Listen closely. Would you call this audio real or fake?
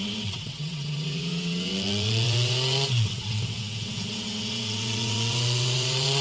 fake